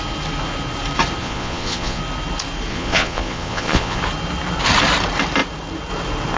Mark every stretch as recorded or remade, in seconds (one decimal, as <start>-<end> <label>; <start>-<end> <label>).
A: 0.0-1.2 recorded; 1.2-2.0 remade; 2.0-2.7 recorded; 2.7-4.0 remade; 4.0-6.4 recorded